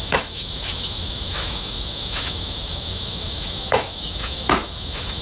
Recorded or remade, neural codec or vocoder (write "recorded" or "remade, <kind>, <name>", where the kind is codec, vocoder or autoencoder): remade, autoencoder, DAC-VAE